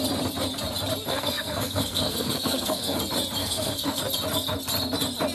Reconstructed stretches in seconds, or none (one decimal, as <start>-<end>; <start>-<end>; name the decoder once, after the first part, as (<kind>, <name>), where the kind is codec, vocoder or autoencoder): 1.1-3.0 (codec, SNAC); 3.4-4.0